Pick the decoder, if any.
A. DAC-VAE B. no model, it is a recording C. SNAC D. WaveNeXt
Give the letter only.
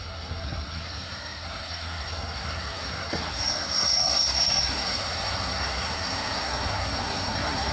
C